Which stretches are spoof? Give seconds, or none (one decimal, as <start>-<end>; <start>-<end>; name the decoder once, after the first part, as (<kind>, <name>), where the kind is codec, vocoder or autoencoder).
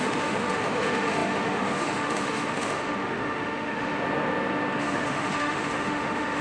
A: 0.0-3.9 (autoencoder, DAC-VAE); 4.8-6.4